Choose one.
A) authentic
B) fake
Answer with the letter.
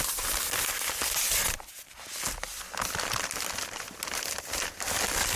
A